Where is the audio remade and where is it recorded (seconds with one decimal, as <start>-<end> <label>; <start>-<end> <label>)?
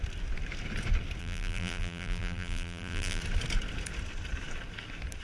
0.0-1.2 recorded; 1.2-3.2 remade; 3.2-5.2 recorded